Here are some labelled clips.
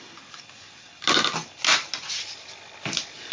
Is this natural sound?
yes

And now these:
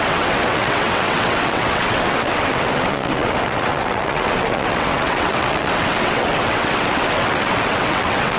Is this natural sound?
no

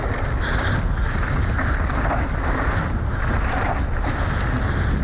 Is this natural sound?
yes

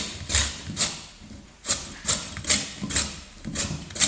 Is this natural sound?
yes